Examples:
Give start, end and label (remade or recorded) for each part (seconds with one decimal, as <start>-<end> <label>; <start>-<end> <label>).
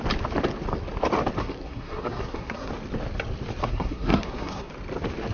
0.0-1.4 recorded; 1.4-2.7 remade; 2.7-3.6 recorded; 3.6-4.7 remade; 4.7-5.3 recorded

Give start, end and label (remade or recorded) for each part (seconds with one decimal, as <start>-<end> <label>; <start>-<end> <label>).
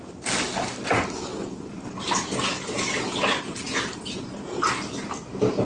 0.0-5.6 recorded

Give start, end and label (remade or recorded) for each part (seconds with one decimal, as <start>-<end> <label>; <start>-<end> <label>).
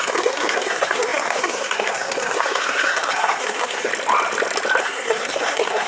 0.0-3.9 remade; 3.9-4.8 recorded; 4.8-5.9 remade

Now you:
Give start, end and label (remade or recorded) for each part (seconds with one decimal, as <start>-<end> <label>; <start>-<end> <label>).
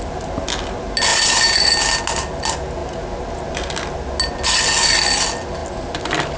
0.0-6.4 recorded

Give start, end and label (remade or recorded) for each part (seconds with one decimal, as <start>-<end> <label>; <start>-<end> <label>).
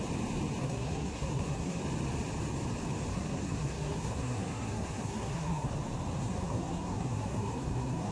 0.0-0.6 recorded; 0.6-1.8 remade; 1.8-3.1 recorded; 3.1-5.7 remade; 5.7-6.2 recorded; 6.2-8.1 remade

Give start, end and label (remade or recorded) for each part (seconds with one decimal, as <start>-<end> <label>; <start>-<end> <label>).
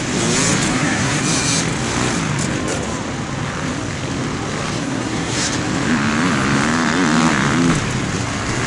0.0-0.7 recorded; 0.7-1.2 remade; 1.2-4.8 recorded; 4.8-5.5 remade; 5.5-8.7 recorded